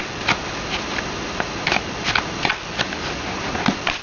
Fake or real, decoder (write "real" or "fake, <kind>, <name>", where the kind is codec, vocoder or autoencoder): real